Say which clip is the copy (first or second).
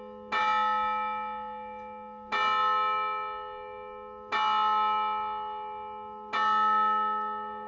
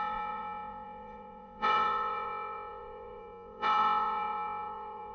second